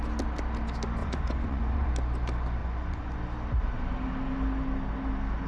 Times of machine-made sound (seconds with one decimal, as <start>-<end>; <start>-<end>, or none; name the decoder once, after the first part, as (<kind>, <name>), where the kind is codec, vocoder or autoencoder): 1.0-1.9 (vocoder, Vocos); 2.6-3.2